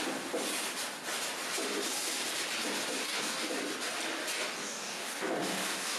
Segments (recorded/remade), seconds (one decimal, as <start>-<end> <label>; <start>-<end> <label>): 0.0-3.0 recorded; 3.0-3.5 remade; 3.5-4.6 recorded; 4.6-6.0 remade